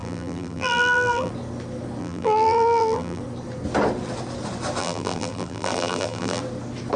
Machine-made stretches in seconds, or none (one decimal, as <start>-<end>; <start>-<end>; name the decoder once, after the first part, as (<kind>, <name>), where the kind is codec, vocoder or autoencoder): 0.0-1.3 (vocoder, BigVGAN v2); 2.0-3.2; 4.8-6.4